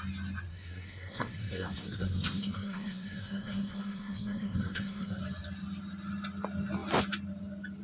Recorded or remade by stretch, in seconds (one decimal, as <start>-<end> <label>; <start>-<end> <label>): 0.0-0.5 recorded; 0.5-5.2 remade; 5.2-7.8 recorded